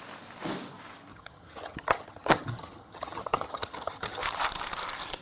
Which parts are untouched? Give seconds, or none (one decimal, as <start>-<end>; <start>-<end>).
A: 0.0-1.1; 4.2-5.2